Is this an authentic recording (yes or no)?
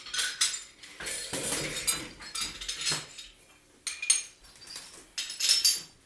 yes